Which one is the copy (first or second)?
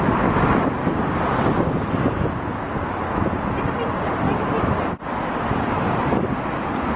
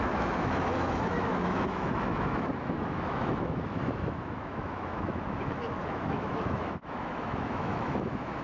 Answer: second